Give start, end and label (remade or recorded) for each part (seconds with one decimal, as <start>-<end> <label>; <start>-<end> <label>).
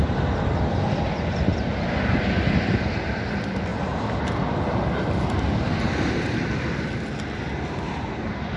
0.0-8.6 recorded